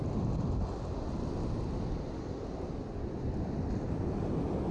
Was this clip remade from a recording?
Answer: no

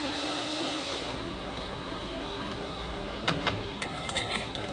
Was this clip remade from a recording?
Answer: yes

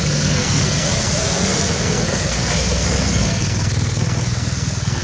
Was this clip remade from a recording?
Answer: yes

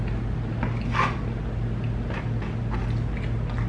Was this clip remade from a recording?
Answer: no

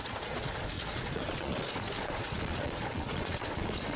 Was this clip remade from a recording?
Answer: yes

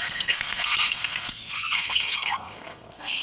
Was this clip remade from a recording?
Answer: yes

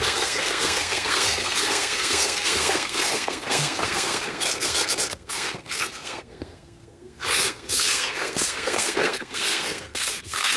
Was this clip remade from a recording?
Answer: yes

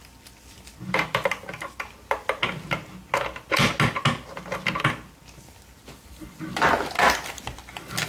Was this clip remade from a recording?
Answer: no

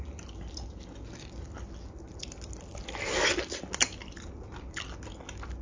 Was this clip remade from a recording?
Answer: no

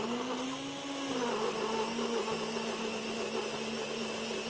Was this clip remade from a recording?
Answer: no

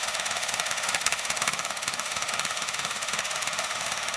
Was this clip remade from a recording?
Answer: yes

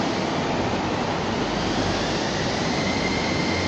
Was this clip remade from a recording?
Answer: no